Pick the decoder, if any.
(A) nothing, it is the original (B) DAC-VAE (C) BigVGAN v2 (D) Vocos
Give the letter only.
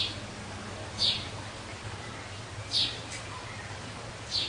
A